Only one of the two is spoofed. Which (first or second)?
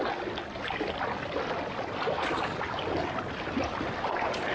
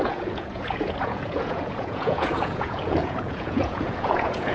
second